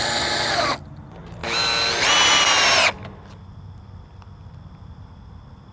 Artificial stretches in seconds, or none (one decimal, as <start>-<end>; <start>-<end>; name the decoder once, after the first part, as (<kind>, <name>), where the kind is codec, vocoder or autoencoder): none